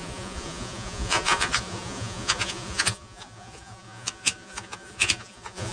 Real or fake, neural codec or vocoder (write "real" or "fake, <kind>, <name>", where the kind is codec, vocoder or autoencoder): fake, vocoder, Vocos